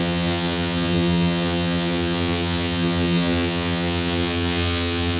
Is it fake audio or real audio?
fake